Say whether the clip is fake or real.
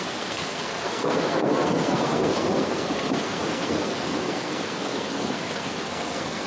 fake